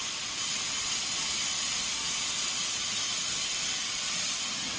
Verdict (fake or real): real